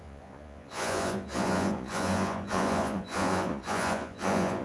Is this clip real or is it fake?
fake